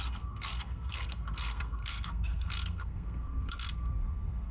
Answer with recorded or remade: remade